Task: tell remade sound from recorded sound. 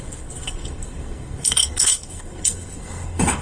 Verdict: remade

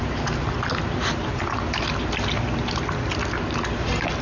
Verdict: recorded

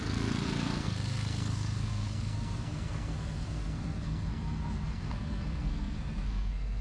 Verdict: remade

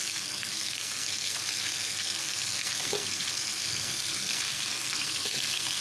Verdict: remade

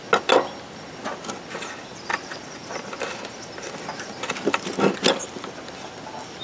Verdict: recorded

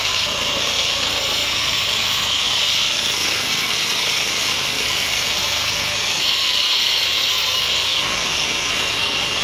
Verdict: remade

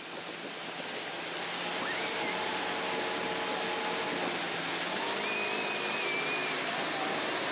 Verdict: recorded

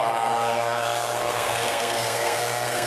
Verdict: remade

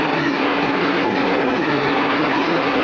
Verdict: remade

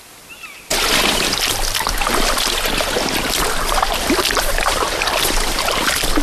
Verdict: recorded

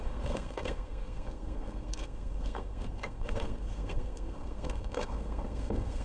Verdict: remade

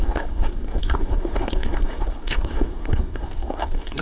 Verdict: remade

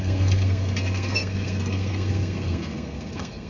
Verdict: remade